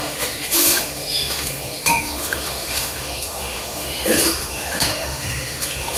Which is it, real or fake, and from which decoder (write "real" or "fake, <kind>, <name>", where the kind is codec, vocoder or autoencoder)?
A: fake, autoencoder, DAC-VAE